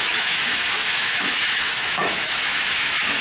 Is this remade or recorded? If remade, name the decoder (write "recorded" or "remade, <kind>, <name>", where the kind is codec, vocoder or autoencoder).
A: remade, autoencoder, DAC-VAE